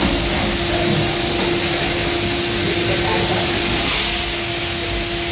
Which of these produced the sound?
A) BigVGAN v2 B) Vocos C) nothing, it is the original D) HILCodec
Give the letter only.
C